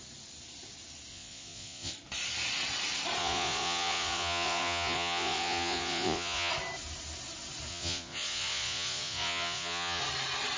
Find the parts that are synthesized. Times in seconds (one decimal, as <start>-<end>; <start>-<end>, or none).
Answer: 1.1-1.9; 3.2-6.5; 7.7-10.0